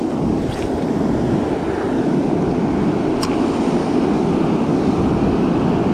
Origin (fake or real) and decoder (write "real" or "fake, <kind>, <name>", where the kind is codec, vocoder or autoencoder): real